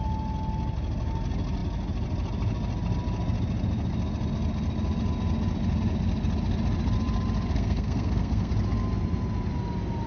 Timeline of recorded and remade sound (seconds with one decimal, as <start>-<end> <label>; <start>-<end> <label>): 0.0-7.5 recorded; 7.5-8.5 remade; 8.5-10.1 recorded